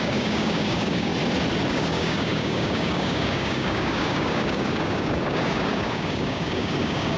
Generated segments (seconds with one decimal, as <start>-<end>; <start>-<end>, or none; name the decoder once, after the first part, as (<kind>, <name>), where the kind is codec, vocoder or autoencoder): 0.0-1.1 (codec, DAC); 1.7-7.2